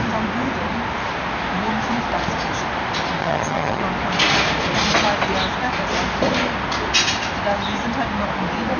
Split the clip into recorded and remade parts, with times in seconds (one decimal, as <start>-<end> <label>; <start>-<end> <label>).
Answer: 0.0-3.2 recorded; 3.2-3.8 remade; 3.8-8.8 recorded